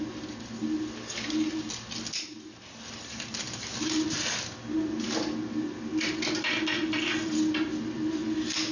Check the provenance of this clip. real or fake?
real